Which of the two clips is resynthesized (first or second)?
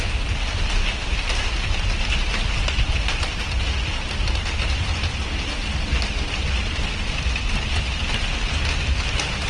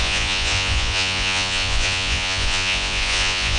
second